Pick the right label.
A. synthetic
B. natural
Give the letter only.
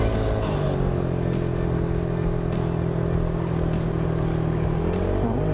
B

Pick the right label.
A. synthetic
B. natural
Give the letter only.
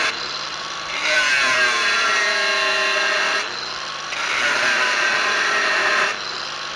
A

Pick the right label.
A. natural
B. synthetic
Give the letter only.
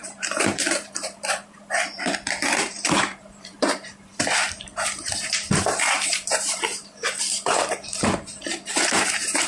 B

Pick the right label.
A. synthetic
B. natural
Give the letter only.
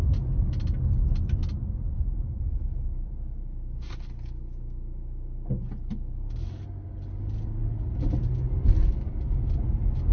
B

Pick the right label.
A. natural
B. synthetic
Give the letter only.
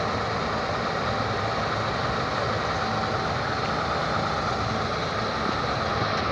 A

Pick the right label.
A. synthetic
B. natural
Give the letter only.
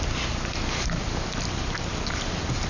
B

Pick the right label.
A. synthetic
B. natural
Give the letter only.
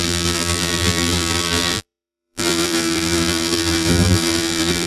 A